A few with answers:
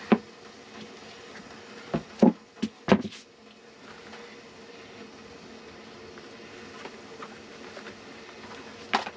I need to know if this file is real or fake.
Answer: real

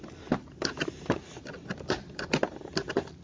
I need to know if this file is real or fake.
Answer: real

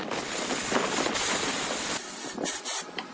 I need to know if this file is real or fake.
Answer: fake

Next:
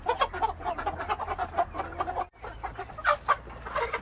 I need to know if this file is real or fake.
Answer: real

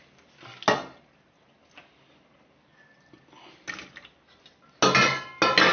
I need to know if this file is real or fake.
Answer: real